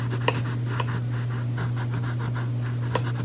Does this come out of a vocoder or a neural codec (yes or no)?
no